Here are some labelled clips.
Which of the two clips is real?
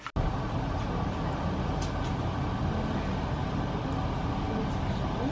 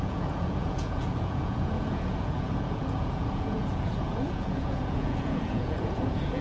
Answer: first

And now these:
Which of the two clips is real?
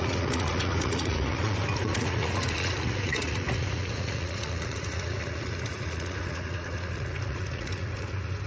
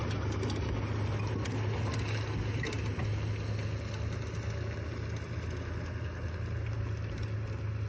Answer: second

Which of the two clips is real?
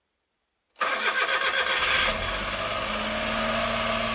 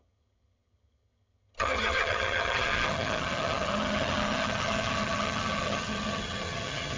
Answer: first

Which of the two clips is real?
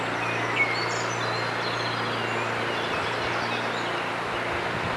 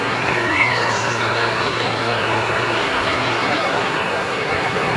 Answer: first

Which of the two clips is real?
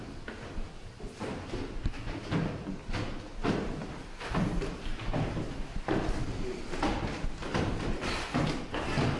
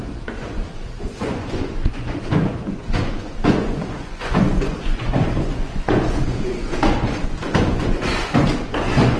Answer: first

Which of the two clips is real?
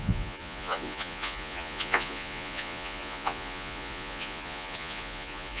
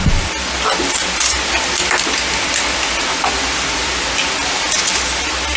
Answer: second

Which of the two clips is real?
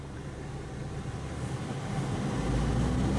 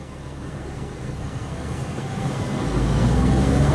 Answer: first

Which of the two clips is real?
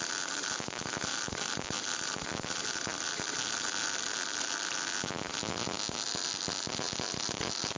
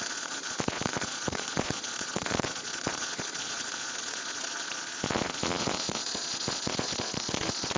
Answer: first